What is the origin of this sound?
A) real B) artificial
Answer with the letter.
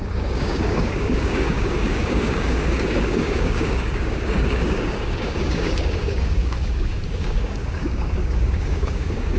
B